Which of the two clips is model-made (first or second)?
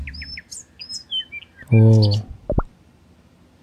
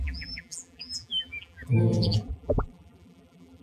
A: second